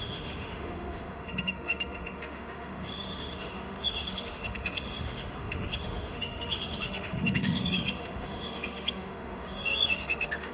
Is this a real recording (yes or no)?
no